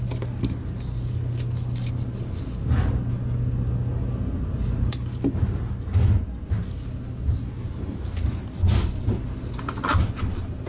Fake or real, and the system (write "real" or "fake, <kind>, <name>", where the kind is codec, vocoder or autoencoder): real